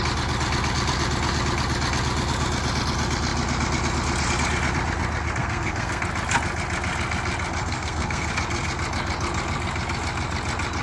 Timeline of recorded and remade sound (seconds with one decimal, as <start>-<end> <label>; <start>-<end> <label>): 0.0-5.4 recorded; 5.4-6.0 remade; 6.0-7.6 recorded; 7.6-8.3 remade; 8.3-10.8 recorded